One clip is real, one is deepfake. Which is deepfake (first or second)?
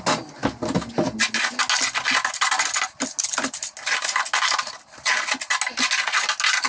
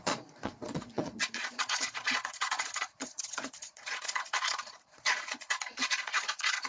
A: second